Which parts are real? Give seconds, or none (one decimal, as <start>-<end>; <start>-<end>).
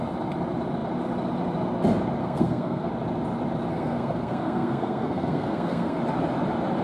0.0-2.2; 2.9-3.7; 6.0-6.8